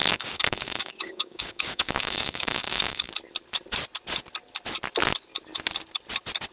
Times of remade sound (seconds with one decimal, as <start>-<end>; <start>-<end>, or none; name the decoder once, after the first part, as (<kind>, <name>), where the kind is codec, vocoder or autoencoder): 0.0-3.1 (codec, DAC)